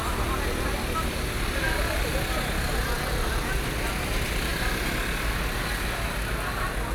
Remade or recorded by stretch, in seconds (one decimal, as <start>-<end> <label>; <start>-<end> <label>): 0.0-6.9 recorded